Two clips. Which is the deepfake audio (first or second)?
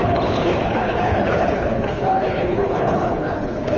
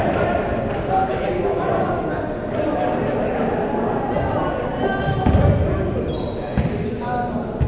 first